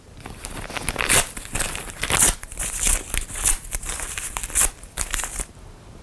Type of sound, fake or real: real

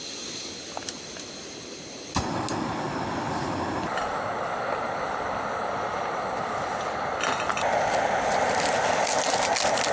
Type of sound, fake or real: real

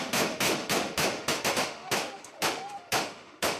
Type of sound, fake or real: fake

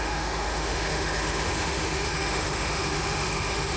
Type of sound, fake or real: fake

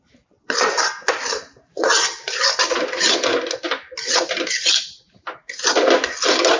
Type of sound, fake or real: real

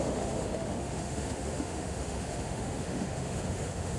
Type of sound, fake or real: fake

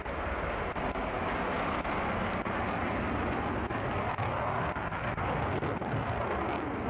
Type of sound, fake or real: real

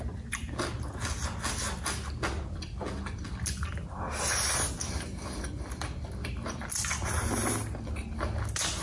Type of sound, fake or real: real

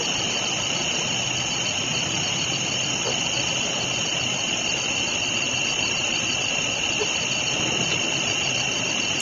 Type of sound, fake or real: real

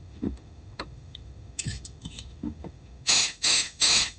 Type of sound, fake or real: fake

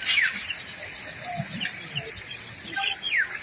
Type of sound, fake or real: real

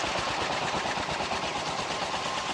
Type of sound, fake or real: real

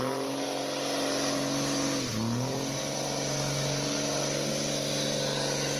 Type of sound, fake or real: real